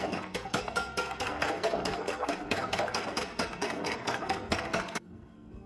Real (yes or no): no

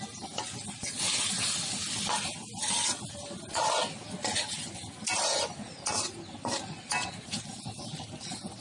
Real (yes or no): yes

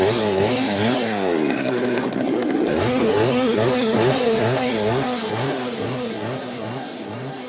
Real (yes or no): no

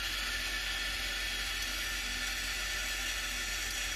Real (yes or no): yes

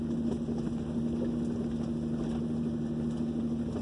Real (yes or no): yes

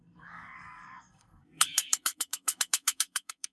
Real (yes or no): no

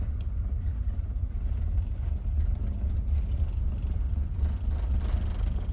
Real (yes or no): yes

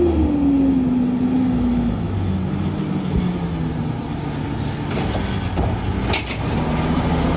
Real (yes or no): yes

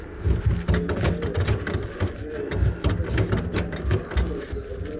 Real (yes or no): yes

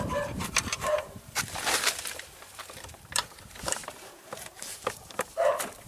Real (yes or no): no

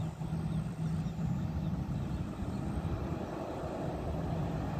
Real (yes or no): yes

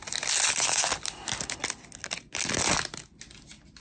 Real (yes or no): yes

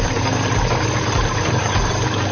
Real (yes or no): no